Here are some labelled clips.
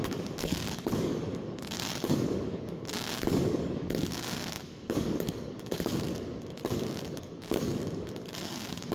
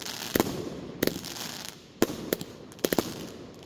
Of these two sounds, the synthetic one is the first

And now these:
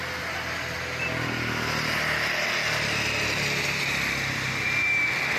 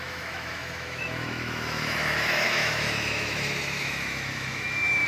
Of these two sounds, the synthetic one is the second